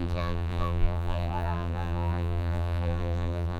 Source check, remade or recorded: remade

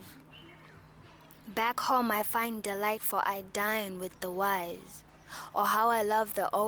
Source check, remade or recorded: recorded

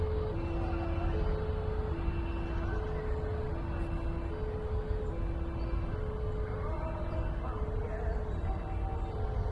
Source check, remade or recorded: recorded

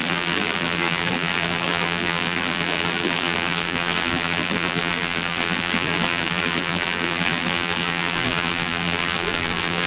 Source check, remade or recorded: remade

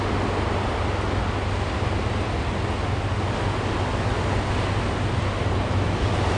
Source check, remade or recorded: recorded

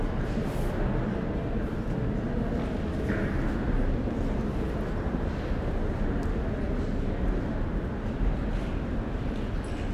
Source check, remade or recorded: recorded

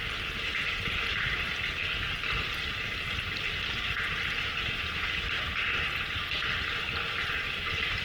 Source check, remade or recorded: remade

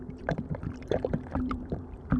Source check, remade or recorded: remade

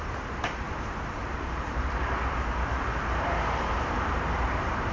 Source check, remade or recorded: remade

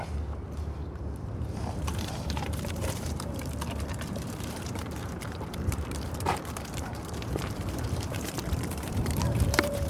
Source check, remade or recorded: remade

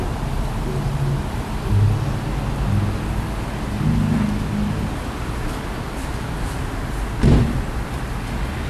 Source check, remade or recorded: recorded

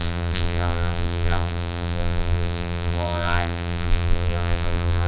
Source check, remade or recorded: remade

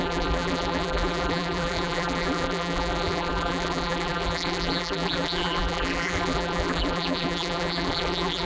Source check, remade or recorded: remade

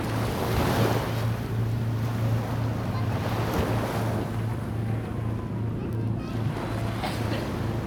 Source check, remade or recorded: recorded